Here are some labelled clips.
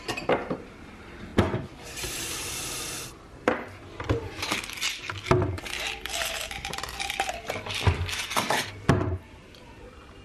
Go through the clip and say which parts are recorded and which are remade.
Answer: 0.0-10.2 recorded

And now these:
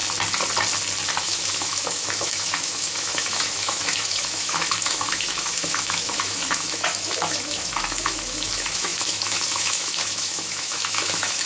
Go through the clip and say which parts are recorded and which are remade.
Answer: 0.0-1.2 recorded; 1.2-11.5 remade

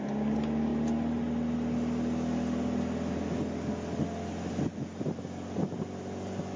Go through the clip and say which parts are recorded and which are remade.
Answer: 0.0-6.6 recorded

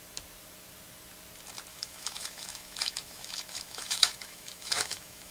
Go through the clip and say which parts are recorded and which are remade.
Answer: 0.0-1.7 recorded; 1.7-5.3 remade

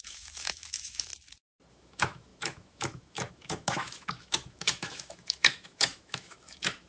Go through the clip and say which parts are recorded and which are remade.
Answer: 0.0-1.1 remade; 1.1-1.7 recorded; 1.7-6.9 remade

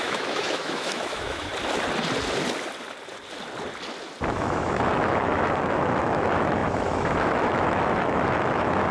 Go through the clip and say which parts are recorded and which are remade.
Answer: 0.0-1.5 remade; 1.5-4.3 recorded; 4.3-8.9 remade